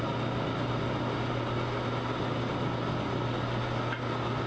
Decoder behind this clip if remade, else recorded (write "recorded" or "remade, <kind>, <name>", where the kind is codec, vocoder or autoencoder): recorded